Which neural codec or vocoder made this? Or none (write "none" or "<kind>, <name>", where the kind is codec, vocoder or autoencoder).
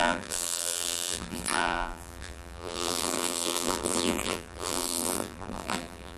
vocoder, BigVGAN v2